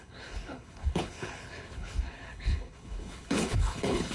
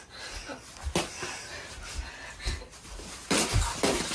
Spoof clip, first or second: first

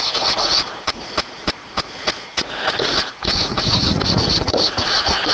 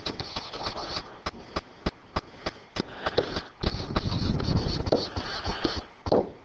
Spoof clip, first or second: first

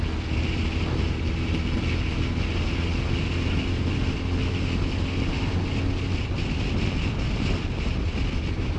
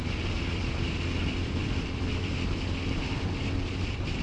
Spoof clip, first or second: second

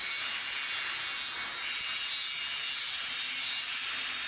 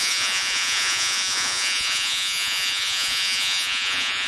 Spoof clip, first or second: second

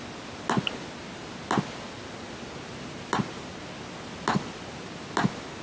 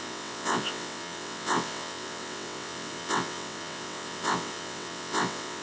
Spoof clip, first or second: second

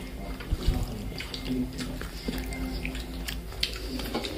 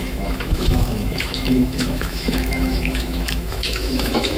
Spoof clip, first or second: second